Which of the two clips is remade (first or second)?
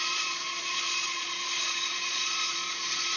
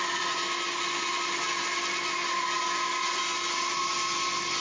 first